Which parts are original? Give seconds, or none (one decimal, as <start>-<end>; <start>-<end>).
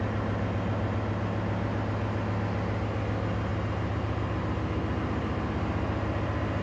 0.0-6.6